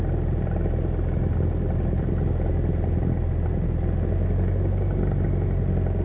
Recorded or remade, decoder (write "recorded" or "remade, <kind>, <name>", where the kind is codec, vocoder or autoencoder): recorded